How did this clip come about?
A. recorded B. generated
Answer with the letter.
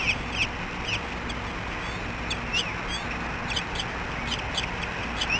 A